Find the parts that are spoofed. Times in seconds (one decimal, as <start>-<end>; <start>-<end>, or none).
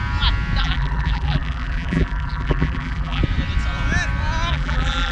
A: 0.6-3.2; 4.5-5.1